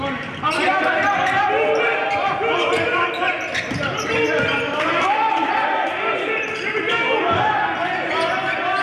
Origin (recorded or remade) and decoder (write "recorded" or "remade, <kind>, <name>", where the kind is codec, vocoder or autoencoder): recorded